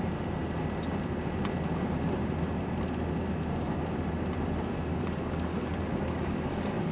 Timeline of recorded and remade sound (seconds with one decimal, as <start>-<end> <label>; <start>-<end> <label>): 0.0-4.9 recorded; 4.9-6.9 remade